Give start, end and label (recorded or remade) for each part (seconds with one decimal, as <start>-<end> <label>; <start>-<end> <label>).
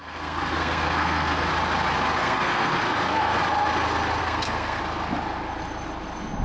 0.0-1.5 remade; 1.5-2.2 recorded; 2.2-3.4 remade; 3.4-4.2 recorded; 4.2-4.8 remade; 4.8-6.4 recorded